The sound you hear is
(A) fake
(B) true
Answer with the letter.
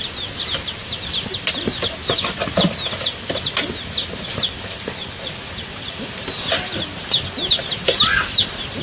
B